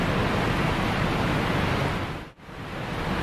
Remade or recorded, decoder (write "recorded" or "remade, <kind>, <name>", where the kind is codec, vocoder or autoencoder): recorded